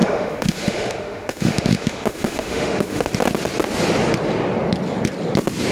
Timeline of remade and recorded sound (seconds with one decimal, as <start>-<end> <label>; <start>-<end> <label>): 0.0-3.1 remade; 3.1-5.7 recorded